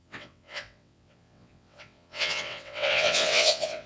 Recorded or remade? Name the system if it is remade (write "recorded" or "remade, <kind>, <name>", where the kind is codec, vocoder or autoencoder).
remade, vocoder, WaveNeXt